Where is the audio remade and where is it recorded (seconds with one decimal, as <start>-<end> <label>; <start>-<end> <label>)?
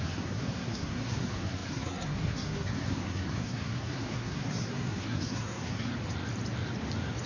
0.0-5.9 remade; 5.9-7.3 recorded